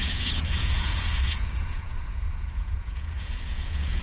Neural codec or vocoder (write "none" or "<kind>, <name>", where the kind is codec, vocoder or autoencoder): vocoder, Vocos